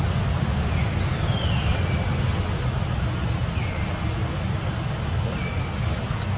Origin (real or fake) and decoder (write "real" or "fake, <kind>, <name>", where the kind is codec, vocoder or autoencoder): real